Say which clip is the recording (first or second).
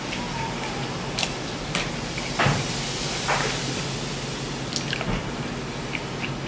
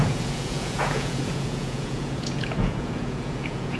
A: first